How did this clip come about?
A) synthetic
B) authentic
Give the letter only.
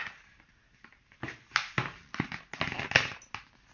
B